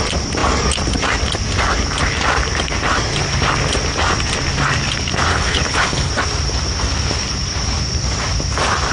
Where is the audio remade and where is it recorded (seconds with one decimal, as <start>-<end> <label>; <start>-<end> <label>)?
0.0-5.3 recorded; 5.3-6.1 remade; 6.1-8.9 recorded